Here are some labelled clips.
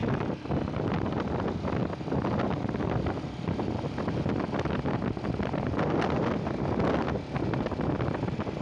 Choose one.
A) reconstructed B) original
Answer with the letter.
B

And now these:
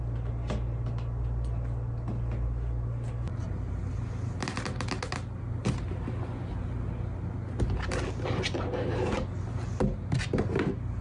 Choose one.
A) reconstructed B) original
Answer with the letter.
B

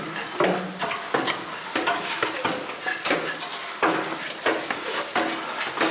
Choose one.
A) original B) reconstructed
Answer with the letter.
A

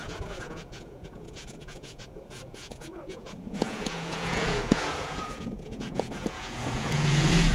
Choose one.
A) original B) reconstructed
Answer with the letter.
B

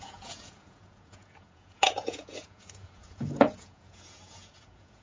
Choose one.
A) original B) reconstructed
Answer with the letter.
B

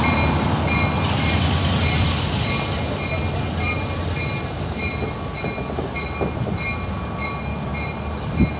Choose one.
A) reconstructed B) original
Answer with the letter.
B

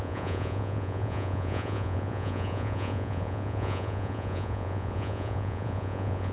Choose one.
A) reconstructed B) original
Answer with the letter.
A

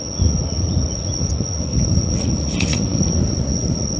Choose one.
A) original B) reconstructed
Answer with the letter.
B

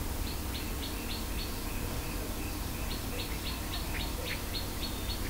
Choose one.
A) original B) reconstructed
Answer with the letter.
A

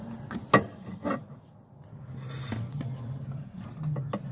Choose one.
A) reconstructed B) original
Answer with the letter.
B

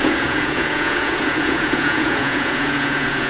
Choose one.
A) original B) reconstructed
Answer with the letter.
B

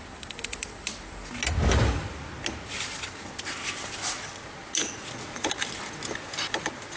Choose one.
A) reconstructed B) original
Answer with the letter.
B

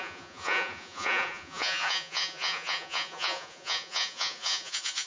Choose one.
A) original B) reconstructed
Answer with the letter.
B